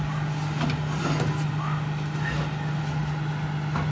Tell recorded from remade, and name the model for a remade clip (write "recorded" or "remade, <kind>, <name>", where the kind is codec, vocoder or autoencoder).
recorded